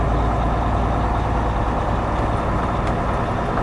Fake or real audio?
real